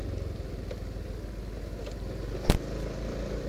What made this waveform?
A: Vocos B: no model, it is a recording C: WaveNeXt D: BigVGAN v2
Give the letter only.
B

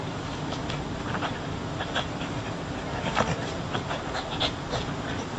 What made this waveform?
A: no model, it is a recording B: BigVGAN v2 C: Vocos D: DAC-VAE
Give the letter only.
A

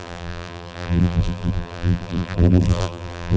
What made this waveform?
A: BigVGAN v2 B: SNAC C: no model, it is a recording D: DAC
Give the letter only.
A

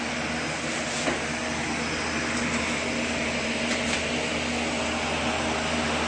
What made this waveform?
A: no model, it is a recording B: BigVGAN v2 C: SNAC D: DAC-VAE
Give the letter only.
A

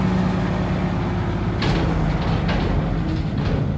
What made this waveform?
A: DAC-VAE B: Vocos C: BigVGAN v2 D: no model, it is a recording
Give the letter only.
D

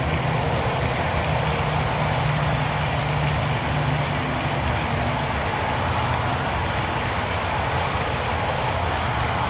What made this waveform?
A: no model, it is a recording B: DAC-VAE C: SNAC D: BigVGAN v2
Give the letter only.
A